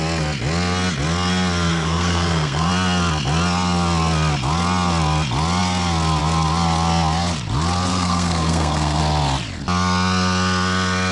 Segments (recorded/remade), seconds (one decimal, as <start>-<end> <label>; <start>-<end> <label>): 0.0-1.7 recorded; 1.7-2.7 remade; 2.7-7.9 recorded; 7.9-9.0 remade; 9.0-11.1 recorded